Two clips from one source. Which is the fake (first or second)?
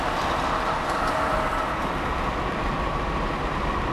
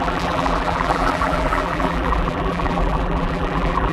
second